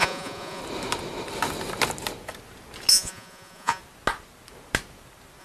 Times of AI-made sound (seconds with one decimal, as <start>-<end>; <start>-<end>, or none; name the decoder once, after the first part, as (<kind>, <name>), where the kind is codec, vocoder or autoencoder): 0.0-0.6 (vocoder, Vocos); 2.9-3.8